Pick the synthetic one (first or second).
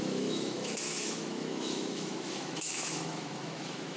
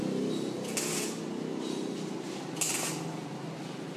first